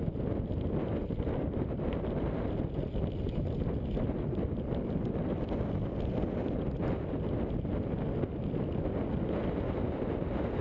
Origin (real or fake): real